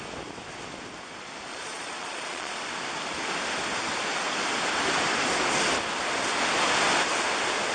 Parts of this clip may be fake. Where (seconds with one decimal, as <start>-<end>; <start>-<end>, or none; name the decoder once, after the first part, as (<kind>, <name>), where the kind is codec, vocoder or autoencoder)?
1.5-2.6 (vocoder, Vocos)